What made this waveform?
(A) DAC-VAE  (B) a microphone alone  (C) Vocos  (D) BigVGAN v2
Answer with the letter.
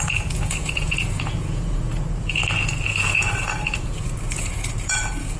C